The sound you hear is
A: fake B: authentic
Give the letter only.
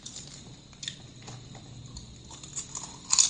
B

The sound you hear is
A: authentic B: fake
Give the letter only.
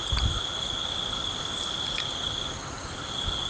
A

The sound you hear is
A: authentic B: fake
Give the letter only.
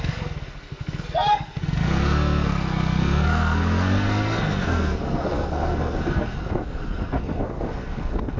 B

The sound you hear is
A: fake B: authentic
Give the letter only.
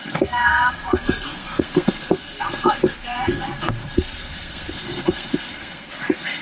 A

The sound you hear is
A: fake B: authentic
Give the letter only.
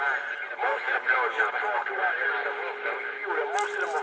B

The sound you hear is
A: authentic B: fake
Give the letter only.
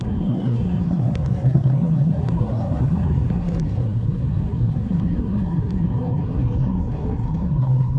B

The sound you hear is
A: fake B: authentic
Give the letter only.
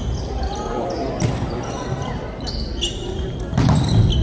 B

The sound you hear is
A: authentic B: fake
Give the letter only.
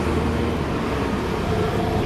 A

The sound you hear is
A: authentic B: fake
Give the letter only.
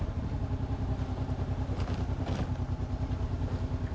A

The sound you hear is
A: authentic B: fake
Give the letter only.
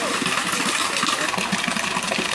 A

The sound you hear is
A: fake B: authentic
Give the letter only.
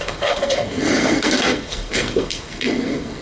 A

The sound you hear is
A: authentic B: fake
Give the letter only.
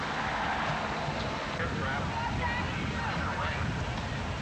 A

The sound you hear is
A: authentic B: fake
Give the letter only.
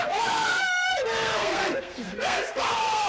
B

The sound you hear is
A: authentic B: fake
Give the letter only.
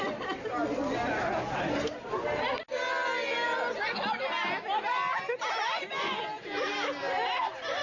A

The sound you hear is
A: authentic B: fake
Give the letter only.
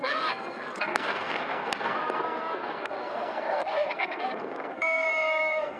B